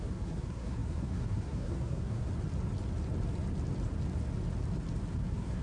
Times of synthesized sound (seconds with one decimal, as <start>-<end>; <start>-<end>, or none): 0.0-2.3; 5.1-5.6